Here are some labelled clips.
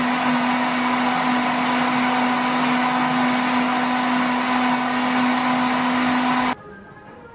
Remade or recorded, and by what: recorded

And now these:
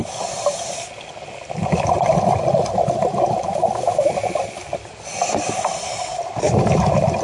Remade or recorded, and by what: recorded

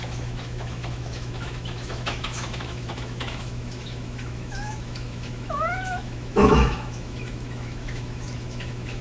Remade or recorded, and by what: remade, autoencoder, DAC-VAE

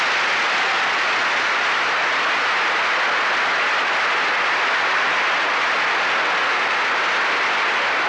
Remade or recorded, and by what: recorded